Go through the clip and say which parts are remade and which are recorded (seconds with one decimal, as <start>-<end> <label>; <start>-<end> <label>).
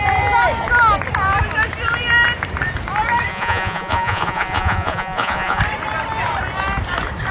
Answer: 0.0-3.3 recorded; 3.3-5.6 remade; 5.6-7.3 recorded